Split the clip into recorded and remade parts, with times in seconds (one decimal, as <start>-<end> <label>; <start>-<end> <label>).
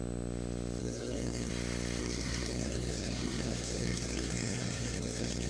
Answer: 0.0-0.8 recorded; 0.8-1.5 remade; 1.5-2.0 recorded; 2.0-5.5 remade